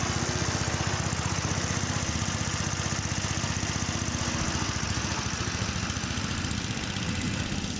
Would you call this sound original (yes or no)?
yes